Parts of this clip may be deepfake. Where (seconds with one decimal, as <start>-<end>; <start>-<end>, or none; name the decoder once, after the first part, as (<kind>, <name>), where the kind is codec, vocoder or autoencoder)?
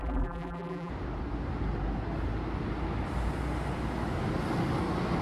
0.0-0.9 (vocoder, BigVGAN v2)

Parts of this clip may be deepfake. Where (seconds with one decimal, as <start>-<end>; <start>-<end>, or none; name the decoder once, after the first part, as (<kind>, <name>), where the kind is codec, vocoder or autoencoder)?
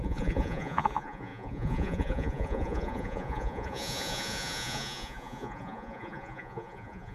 0.0-7.1 (vocoder, Vocos)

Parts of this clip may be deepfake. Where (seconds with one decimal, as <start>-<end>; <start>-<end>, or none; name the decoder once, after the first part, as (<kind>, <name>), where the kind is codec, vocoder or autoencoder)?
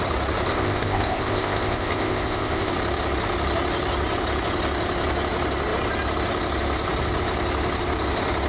0.5-2.7 (codec, ZipCodec)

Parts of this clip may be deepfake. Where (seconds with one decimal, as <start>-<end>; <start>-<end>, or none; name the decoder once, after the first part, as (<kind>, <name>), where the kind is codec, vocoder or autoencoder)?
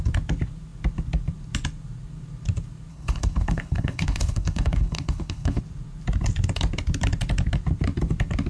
2.9-5.6 (codec, HILCodec)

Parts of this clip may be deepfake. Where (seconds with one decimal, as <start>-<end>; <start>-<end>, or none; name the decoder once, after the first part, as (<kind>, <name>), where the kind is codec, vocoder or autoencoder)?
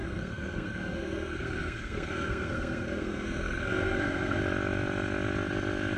0.0-4.4 (codec, SNAC)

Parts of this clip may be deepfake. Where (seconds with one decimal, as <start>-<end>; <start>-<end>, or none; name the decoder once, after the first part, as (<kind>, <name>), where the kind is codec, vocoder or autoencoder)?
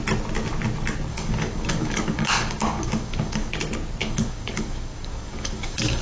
1.1-3.5 (codec, DAC); 4.0-6.0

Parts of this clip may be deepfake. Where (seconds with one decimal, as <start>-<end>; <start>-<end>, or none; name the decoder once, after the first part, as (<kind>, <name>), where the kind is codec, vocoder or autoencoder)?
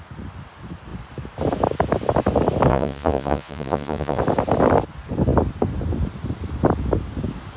2.7-4.2 (vocoder, Vocos)